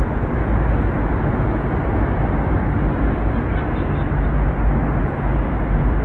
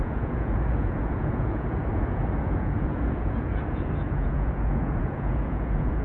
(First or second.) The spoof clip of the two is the second